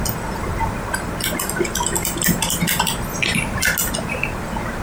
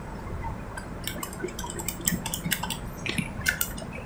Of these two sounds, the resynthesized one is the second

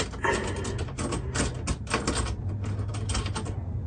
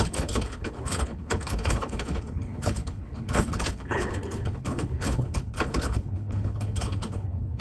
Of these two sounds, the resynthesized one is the second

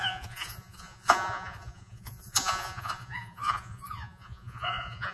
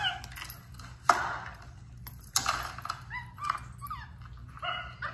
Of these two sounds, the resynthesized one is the first